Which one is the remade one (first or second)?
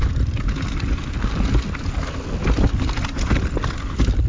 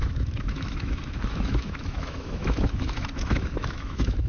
second